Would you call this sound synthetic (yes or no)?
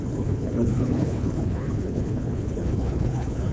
yes